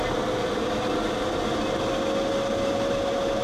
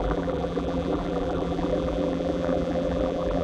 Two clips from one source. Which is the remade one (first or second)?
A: second